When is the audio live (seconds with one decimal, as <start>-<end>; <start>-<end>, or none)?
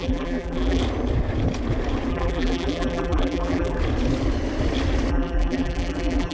0.8-2.1; 3.8-5.1